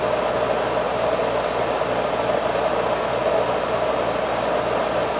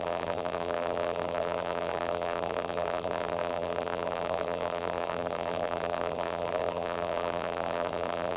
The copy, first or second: second